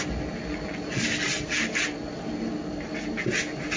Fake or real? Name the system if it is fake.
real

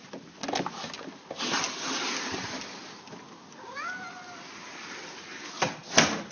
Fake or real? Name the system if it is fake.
real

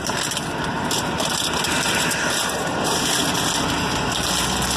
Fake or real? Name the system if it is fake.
real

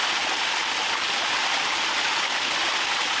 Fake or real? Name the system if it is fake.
real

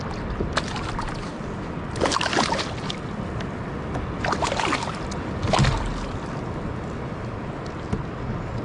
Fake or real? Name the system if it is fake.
real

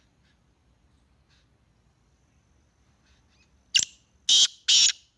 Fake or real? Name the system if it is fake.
real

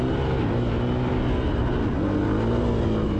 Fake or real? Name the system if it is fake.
real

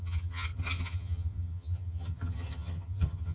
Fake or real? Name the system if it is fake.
fake, vocoder, HiFi-GAN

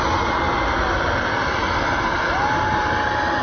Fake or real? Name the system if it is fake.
real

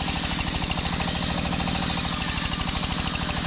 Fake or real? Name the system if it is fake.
real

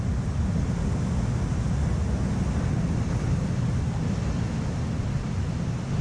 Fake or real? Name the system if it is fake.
real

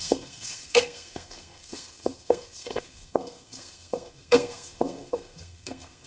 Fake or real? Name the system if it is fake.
fake, codec, SNAC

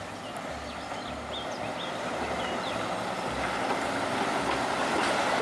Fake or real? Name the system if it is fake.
real